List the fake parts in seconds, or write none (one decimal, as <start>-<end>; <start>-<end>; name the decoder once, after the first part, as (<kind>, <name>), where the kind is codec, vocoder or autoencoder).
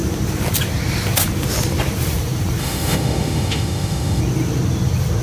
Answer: 2.6-4.2 (autoencoder, DAC-VAE)